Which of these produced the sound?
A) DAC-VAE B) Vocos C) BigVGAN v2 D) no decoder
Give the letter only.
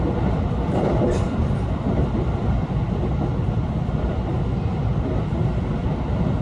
C